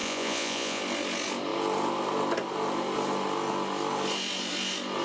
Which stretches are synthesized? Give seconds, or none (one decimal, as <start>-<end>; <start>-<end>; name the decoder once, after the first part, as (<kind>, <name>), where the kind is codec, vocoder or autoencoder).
0.0-0.8 (vocoder, Vocos)